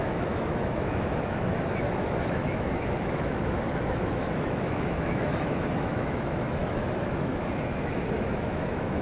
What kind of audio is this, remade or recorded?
remade